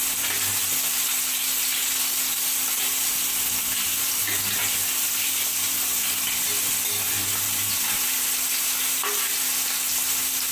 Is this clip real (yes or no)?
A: yes